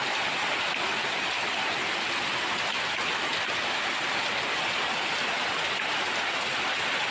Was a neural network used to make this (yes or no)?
no